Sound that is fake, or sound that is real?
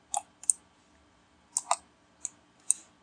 real